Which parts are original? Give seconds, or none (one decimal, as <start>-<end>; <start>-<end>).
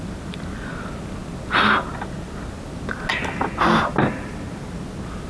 0.0-5.3